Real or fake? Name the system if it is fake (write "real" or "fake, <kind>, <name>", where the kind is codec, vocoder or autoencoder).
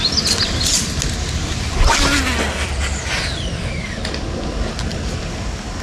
real